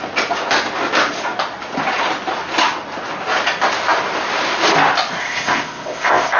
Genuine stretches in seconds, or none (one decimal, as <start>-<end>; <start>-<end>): 0.0-5.2

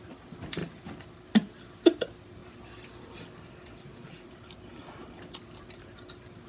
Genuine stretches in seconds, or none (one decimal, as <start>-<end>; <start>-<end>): 0.0-6.5

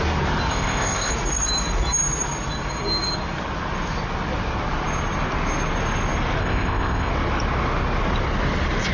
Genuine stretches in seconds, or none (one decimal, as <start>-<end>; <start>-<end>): 0.0-0.5; 1.1-6.4; 7.1-8.9

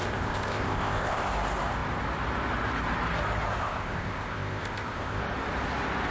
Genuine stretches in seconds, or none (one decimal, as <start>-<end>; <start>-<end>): 1.3-3.6; 5.2-6.1